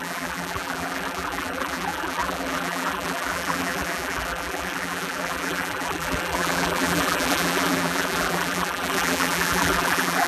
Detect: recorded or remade remade